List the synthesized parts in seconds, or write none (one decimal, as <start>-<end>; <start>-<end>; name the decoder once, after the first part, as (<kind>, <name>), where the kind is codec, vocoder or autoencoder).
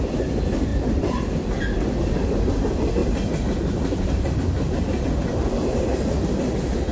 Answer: 0.7-1.6 (vocoder, BigVGAN v2); 3.0-4.3